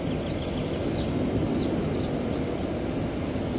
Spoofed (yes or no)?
no